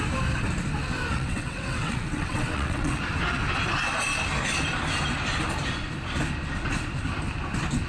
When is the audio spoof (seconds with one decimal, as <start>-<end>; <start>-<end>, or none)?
1.1-3.0